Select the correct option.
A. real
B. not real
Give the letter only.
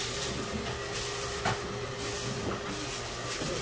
A